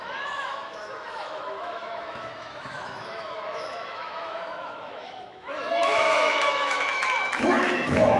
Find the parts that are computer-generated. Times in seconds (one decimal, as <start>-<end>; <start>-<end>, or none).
0.0-8.2